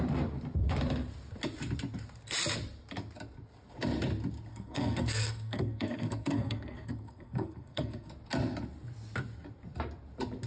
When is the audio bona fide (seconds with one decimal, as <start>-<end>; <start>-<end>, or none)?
0.0-4.5; 8.1-10.5